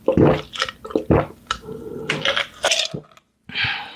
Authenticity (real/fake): real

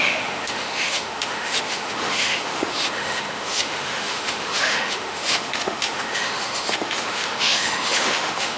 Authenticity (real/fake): fake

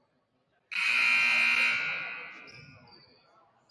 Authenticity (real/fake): real